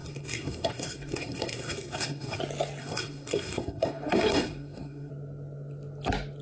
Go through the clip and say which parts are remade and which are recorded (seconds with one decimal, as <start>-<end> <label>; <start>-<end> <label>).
0.0-2.4 remade; 2.4-2.8 recorded; 2.8-5.1 remade; 5.1-6.4 recorded